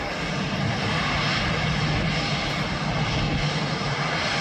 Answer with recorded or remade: recorded